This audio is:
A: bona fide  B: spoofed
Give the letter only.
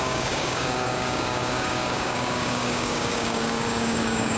B